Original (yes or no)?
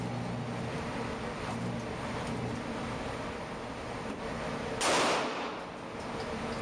yes